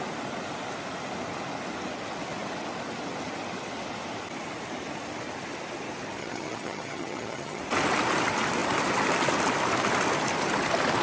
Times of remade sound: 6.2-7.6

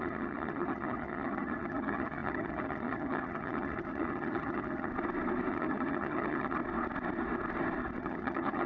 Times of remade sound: 0.0-4.9; 5.5-6.6; 8.0-8.7

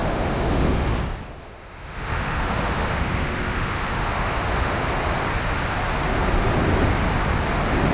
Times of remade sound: 0.0-0.9; 1.4-4.8

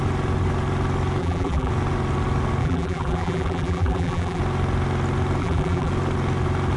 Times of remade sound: 1.2-1.7; 2.6-4.4; 5.4-5.9

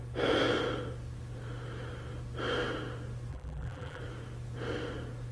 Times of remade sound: 3.3-4.0

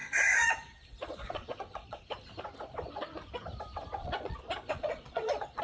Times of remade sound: 0.0-2.0; 4.0-5.6